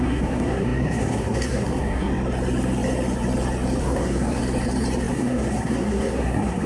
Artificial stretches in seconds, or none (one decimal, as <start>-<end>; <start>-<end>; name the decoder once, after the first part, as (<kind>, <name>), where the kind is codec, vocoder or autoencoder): 0.0-2.1 (codec, SNAC); 3.8-4.4; 5.1-6.7